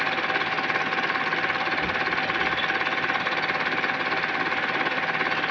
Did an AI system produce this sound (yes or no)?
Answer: no